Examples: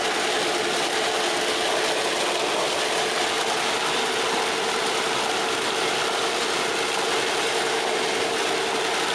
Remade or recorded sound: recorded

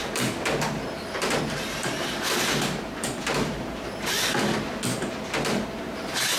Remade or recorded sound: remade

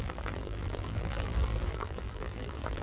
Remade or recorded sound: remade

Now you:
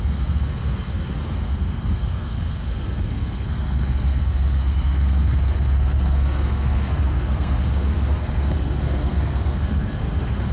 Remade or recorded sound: remade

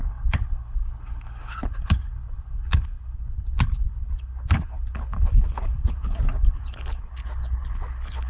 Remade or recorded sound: remade